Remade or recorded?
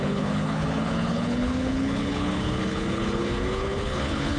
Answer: remade